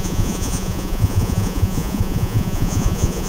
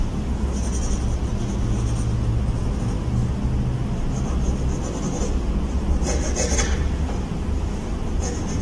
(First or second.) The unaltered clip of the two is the second